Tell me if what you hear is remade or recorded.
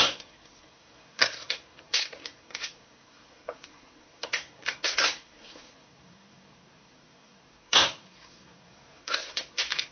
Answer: remade